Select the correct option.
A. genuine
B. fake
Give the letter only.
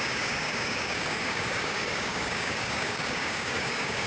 B